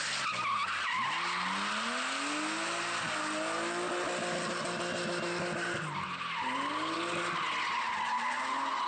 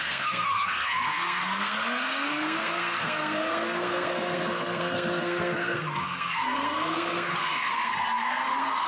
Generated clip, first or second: second